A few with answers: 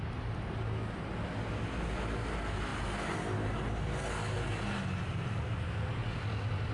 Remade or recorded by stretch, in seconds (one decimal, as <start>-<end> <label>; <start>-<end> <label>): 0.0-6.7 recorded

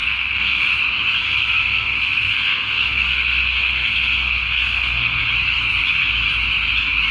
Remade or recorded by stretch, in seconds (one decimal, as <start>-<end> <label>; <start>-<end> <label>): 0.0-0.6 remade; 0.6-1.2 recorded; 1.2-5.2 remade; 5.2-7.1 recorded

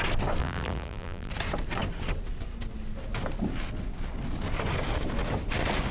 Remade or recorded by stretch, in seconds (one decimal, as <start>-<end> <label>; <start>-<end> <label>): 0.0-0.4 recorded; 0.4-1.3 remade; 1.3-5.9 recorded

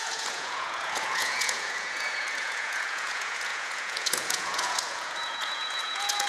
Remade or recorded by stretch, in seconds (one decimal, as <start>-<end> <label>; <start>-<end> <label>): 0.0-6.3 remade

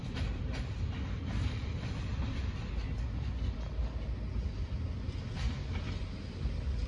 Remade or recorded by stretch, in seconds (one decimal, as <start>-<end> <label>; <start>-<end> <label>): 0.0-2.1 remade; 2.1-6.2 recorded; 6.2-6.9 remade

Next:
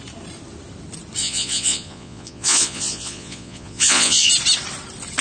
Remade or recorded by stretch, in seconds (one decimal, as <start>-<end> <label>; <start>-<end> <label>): 0.0-1.2 recorded; 1.2-4.3 remade; 4.3-5.2 recorded

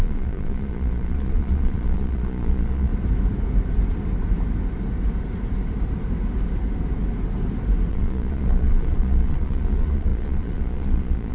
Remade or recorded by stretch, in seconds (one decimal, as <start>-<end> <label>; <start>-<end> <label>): 0.0-2.9 remade; 2.9-7.9 recorded; 7.9-11.3 remade

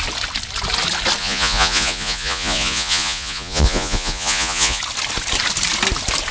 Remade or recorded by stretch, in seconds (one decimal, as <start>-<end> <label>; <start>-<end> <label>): 0.0-1.2 recorded; 1.2-4.8 remade; 4.8-6.3 recorded